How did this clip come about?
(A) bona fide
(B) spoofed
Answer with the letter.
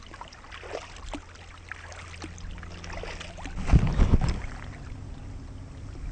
A